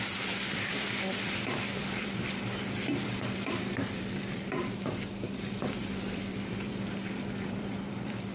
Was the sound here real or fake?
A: fake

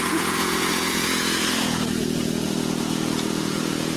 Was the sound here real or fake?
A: fake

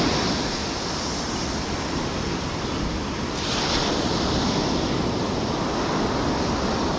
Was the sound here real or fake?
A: real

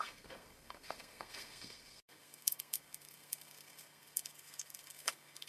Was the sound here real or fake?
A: fake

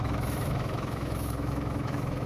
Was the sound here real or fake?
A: fake